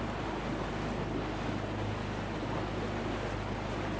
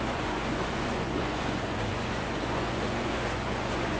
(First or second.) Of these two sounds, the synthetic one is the second